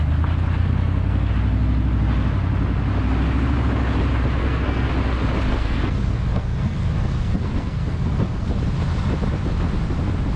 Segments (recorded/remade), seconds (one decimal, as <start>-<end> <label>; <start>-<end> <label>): 0.0-0.6 recorded; 0.6-1.3 remade; 1.3-4.4 recorded; 4.4-4.9 remade; 4.9-5.5 recorded; 5.5-8.5 remade; 8.5-10.4 recorded